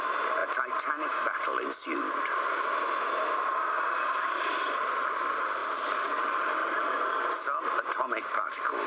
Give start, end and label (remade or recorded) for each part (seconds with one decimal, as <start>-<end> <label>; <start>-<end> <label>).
0.0-8.9 recorded